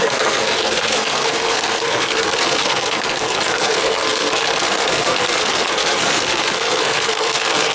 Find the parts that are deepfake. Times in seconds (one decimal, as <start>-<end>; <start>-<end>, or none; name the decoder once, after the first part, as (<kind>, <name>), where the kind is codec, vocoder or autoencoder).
0.0-7.7 (codec, SNAC)